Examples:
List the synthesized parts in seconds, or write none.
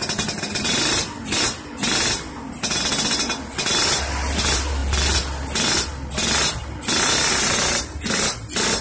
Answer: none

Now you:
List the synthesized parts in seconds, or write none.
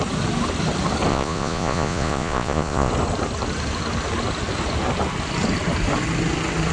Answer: 1.1-2.9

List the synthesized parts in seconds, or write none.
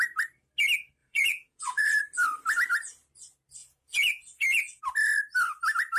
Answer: 1.0-2.0; 3.6-4.8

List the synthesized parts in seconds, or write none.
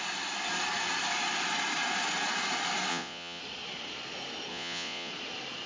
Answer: 2.9-3.4; 4.5-5.1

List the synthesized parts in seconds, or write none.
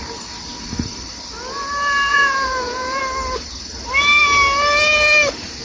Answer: 2.1-3.0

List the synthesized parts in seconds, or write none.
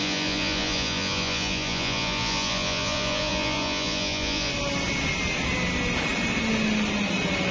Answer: 0.0-4.5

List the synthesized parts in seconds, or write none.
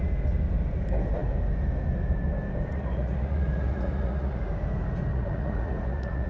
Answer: 2.7-4.4; 5.1-6.3